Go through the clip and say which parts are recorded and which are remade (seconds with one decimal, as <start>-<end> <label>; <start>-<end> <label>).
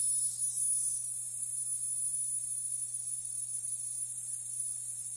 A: 0.0-5.2 recorded